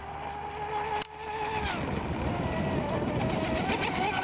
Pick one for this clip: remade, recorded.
recorded